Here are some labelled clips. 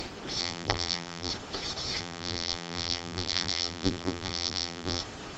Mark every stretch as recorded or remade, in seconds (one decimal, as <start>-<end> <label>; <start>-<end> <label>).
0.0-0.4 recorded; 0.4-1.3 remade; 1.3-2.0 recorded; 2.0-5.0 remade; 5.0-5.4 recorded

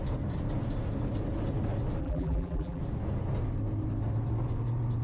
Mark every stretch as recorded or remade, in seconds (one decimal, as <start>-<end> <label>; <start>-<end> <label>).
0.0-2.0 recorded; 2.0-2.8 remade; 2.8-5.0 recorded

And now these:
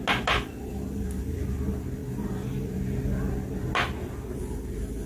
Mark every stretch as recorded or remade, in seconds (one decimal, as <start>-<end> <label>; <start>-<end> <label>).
0.0-2.0 recorded; 2.0-2.8 remade; 2.8-5.1 recorded